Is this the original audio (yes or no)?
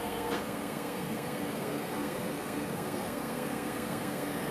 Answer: no